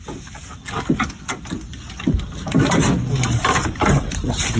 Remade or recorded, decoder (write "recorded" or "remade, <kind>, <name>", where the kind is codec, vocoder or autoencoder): recorded